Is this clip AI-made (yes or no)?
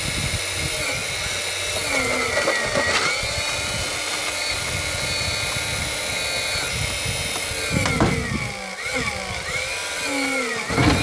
no